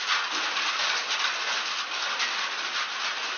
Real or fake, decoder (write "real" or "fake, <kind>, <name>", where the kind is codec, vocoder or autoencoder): real